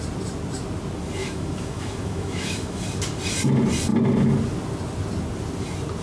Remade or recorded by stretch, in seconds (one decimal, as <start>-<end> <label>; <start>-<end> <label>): 0.0-1.2 recorded; 1.2-2.8 remade; 2.8-6.0 recorded